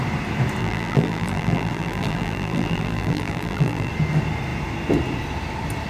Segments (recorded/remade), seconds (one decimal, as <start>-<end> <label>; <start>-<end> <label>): 0.0-0.6 recorded; 0.6-3.9 remade; 3.9-5.9 recorded